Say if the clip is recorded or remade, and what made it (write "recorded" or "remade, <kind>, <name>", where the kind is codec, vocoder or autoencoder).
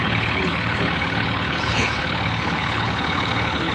remade, codec, HILCodec